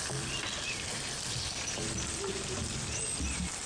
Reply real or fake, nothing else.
real